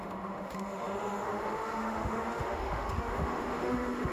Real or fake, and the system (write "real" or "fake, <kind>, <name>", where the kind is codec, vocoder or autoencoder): fake, autoencoder, DAC-VAE